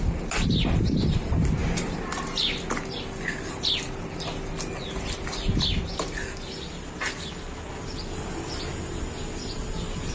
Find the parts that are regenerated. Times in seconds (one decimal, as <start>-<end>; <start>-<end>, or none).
none